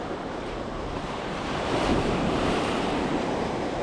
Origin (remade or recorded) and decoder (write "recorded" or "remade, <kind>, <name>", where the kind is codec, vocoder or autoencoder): remade, vocoder, BigVGAN v2